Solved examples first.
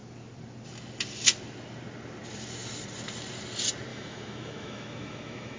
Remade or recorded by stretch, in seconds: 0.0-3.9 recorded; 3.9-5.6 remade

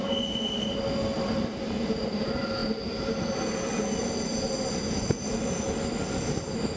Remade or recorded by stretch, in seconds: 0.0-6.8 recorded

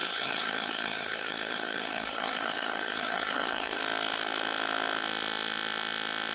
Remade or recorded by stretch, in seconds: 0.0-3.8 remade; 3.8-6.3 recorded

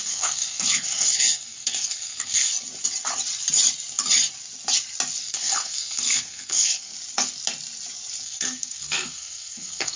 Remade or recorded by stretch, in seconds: 0.0-2.5 remade; 2.5-5.2 recorded; 5.2-6.9 remade; 6.9-8.2 recorded; 8.2-10.0 remade

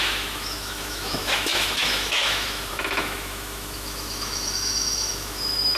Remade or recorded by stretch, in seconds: 0.0-5.8 remade

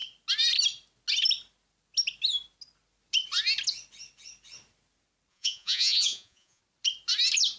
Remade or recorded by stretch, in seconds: 0.0-5.3 recorded; 5.3-6.6 remade; 6.6-7.6 recorded

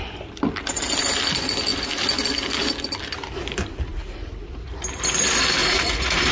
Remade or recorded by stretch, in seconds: 0.0-4.0 recorded; 4.0-4.7 remade; 4.7-5.6 recorded; 5.6-6.3 remade

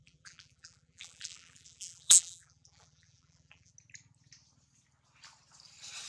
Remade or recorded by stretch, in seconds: 0.0-3.7 remade; 3.7-6.1 recorded